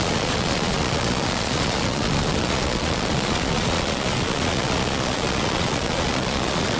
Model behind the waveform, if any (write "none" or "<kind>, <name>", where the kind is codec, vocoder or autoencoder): vocoder, Vocos